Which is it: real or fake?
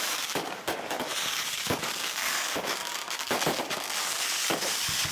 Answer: fake